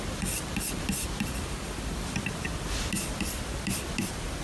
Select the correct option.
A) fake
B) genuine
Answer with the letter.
A